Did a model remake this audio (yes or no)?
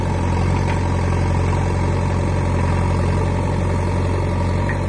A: no